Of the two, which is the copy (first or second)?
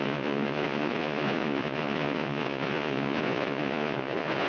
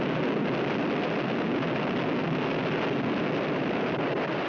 first